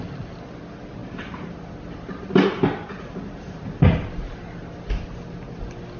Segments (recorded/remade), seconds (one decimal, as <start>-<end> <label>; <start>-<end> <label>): 0.0-6.0 recorded